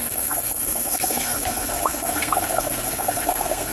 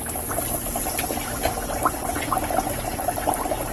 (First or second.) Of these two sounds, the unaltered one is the second